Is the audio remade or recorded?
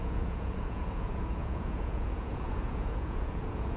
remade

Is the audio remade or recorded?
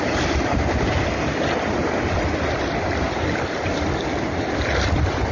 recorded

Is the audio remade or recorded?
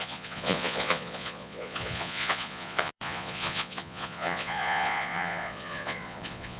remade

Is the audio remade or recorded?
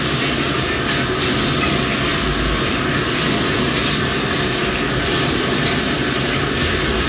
recorded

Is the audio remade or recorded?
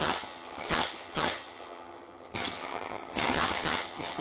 remade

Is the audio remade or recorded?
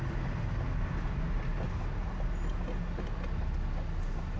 recorded